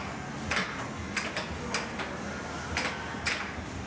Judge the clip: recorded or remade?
recorded